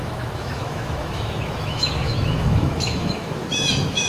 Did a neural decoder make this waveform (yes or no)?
yes